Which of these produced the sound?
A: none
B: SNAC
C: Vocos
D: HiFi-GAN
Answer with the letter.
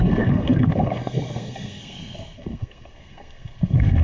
B